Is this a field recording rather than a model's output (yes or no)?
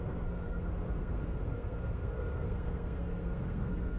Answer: no